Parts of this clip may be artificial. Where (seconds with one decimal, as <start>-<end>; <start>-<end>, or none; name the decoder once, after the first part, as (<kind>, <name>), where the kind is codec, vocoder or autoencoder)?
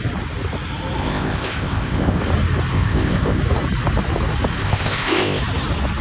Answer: 1.0-2.2 (codec, ZipCodec); 2.7-3.4; 4.6-5.4